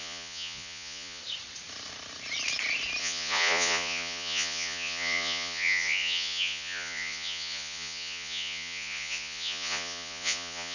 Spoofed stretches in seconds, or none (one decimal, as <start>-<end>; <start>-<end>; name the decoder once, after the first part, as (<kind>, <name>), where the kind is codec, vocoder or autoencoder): 0.0-1.2 (vocoder, Vocos); 3.0-10.7